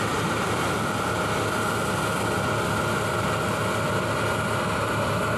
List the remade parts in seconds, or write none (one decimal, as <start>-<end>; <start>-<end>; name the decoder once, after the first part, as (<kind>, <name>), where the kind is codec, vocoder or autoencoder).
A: 0.0-0.7 (vocoder, BigVGAN v2)